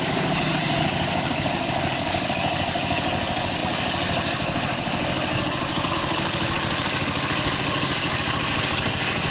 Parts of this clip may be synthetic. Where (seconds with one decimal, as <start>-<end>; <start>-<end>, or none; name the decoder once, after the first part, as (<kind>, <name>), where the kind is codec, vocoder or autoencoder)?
0.0-9.3 (codec, DAC)